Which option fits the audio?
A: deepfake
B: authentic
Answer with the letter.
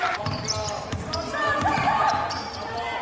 B